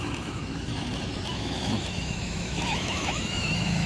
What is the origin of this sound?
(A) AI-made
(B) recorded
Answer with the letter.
A